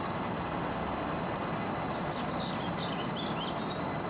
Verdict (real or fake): real